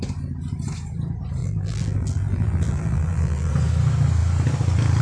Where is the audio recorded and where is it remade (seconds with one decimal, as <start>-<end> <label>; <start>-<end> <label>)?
0.0-1.4 recorded; 1.4-3.5 remade; 3.5-5.0 recorded